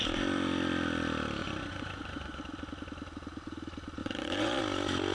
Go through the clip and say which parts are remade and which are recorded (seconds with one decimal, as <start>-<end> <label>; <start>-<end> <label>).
0.0-1.4 recorded; 1.4-2.4 remade; 2.4-4.0 recorded; 4.0-4.6 remade; 4.6-5.1 recorded